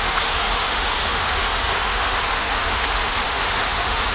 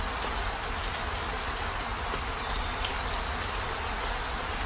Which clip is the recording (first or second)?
second